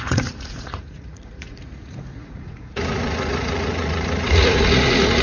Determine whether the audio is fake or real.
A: fake